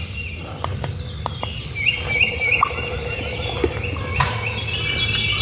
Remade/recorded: recorded